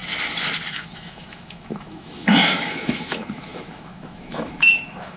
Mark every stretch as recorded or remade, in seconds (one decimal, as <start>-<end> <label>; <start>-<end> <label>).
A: 0.0-0.7 recorded; 0.7-5.2 remade